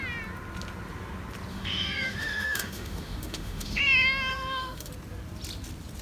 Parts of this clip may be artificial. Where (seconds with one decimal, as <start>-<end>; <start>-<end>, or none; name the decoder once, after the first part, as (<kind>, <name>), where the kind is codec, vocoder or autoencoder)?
1.5-3.8 (autoencoder, DAC-VAE); 4.3-4.9